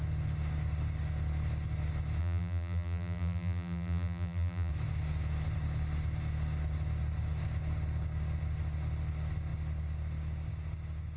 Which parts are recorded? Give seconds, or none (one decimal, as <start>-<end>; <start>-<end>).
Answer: 0.0-2.2; 4.7-11.2